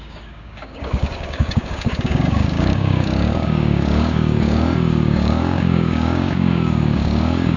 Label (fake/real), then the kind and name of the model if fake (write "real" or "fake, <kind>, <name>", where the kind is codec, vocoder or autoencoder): fake, codec, DAC